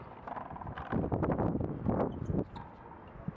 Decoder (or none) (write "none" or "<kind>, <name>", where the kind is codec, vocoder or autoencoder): none